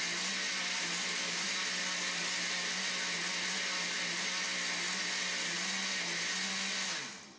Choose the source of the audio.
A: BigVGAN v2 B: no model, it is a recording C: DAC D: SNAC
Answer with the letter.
B